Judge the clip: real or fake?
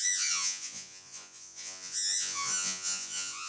fake